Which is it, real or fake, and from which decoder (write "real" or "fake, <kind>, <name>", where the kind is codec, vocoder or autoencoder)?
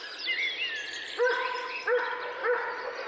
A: real